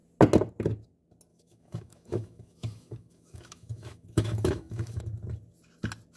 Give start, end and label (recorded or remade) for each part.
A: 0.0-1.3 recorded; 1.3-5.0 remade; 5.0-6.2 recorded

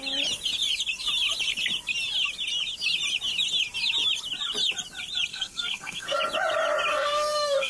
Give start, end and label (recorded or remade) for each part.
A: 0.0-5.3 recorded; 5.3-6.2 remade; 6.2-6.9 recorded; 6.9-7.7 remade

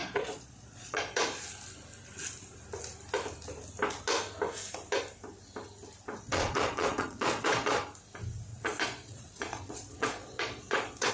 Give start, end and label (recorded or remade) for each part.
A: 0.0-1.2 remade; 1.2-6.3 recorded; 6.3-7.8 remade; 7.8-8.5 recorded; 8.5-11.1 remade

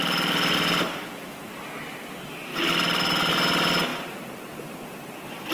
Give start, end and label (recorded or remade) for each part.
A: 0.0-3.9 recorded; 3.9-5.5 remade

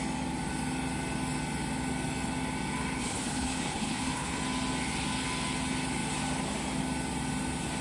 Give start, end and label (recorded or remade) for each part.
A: 0.0-3.0 recorded; 3.0-4.4 remade; 4.4-7.8 recorded

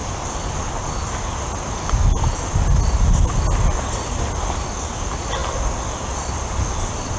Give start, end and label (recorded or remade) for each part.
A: 0.0-7.2 recorded

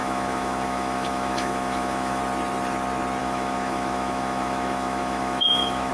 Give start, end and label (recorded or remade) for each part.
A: 0.0-2.2 remade; 2.2-3.2 recorded; 3.2-5.9 remade